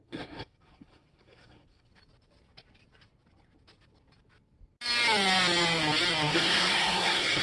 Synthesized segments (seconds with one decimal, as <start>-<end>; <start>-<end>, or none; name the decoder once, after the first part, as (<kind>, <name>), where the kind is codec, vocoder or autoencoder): 0.0-1.9 (codec, SNAC); 6.3-7.4